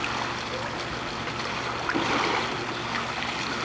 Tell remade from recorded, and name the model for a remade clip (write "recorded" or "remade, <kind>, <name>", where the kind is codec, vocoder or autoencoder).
recorded